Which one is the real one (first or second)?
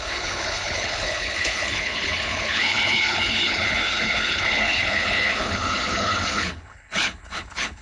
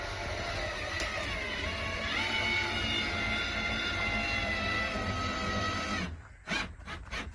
second